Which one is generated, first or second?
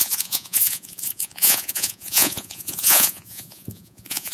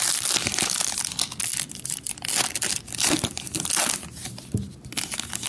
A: first